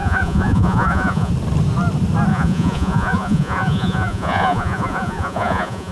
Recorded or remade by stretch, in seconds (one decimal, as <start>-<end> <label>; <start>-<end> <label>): 0.0-1.3 remade; 1.3-2.3 recorded; 2.3-5.9 remade